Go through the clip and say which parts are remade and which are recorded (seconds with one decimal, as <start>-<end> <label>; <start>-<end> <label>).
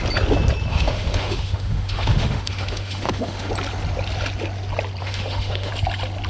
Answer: 0.0-0.7 recorded; 0.7-3.5 remade; 3.5-5.0 recorded; 5.0-5.7 remade; 5.7-6.3 recorded